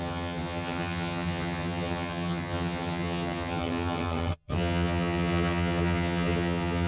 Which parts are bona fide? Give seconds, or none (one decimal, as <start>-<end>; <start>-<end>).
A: none